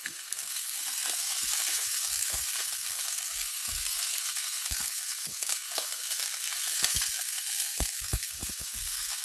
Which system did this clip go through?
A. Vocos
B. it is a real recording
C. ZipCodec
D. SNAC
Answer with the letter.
D